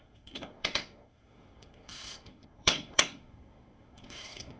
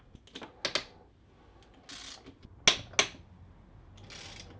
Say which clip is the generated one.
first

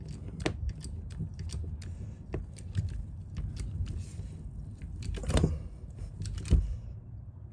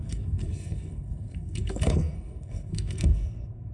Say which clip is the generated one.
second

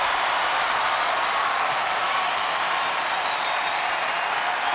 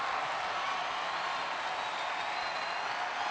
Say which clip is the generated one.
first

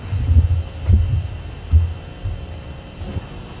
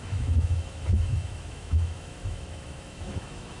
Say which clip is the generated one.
second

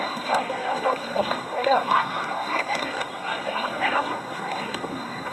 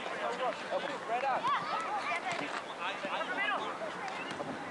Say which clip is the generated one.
first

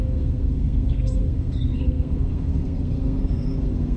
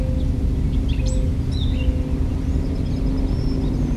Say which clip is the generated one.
first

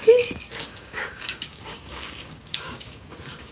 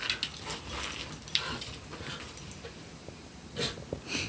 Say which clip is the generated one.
first